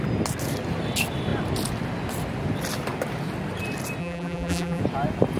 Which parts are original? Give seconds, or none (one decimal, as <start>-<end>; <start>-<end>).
0.0-4.0; 4.8-5.4